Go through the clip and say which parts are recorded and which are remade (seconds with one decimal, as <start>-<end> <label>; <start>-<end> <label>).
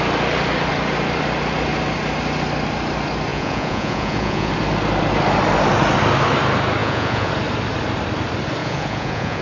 0.0-3.3 recorded; 3.3-4.5 remade; 4.5-6.8 recorded; 6.8-7.3 remade; 7.3-8.6 recorded; 8.6-9.4 remade